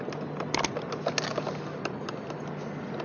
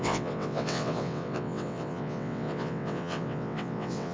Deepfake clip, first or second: second